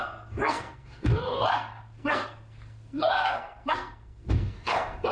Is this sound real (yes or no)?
no